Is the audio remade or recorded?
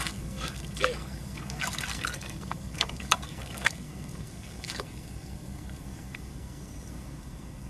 remade